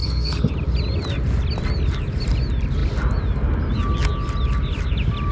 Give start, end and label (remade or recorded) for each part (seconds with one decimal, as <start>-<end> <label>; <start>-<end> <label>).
0.0-0.5 remade; 0.5-5.3 recorded